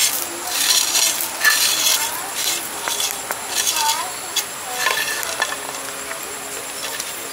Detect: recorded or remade recorded